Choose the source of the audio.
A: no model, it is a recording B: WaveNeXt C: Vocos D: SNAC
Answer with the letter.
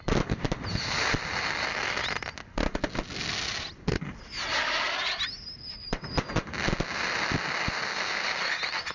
A